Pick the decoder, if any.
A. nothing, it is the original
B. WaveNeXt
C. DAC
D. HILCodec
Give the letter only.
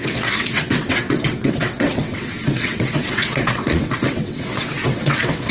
B